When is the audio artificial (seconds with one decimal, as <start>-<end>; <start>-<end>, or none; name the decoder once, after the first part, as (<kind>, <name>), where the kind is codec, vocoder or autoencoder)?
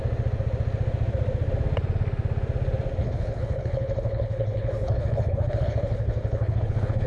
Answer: 3.0-7.1 (codec, HILCodec)